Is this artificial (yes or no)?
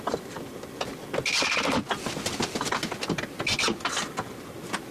no